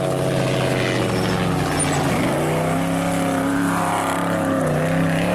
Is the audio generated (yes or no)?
no